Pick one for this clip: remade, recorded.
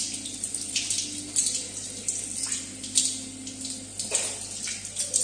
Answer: recorded